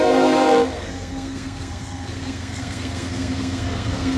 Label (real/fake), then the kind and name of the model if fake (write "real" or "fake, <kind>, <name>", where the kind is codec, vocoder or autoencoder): fake, codec, SNAC